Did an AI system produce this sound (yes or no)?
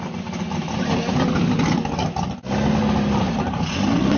no